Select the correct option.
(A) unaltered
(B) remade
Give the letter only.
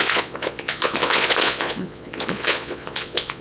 B